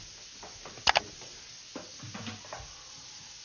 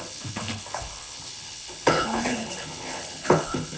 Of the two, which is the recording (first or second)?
first